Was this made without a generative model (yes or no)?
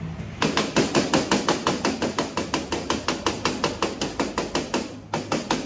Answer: yes